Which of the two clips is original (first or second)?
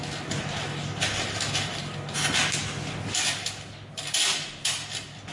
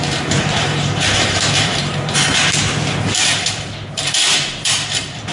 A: first